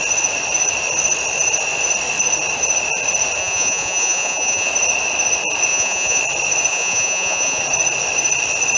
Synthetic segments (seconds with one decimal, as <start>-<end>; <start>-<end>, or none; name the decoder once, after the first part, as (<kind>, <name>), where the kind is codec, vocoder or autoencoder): 3.4-4.7 (vocoder, Vocos); 5.7-6.2; 6.7-7.6